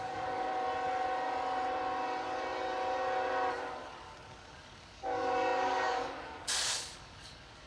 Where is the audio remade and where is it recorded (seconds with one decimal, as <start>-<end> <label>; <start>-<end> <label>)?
0.0-0.5 remade; 0.5-3.5 recorded; 3.5-7.7 remade